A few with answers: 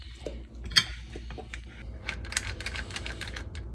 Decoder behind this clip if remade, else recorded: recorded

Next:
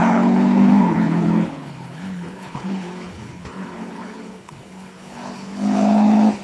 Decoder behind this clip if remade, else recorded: remade, codec, HILCodec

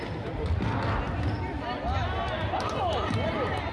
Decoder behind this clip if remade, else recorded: recorded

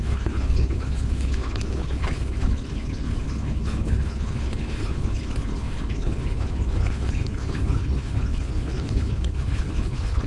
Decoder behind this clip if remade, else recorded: remade, codec, HILCodec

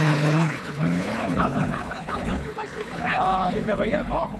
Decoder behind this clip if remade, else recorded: remade, codec, HILCodec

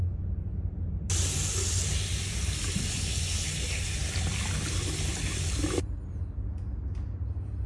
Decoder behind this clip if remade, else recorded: recorded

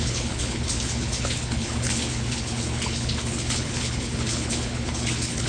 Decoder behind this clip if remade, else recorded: remade, codec, HILCodec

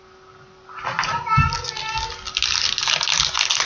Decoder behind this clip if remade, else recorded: recorded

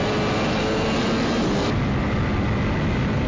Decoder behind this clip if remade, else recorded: recorded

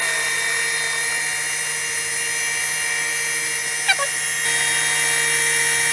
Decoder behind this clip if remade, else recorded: recorded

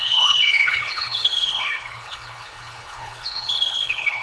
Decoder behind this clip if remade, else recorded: remade, codec, HILCodec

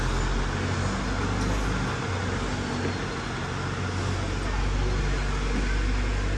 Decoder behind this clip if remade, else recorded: recorded